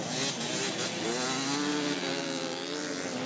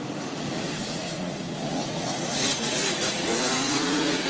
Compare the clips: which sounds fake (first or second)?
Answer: second